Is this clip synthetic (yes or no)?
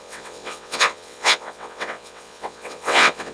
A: yes